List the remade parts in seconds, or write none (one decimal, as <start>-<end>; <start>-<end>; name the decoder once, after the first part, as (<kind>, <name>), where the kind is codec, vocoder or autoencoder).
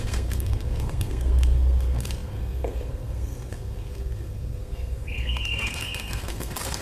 0.0-6.8 (codec, SNAC)